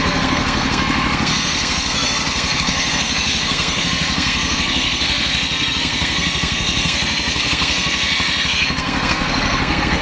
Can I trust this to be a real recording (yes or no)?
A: no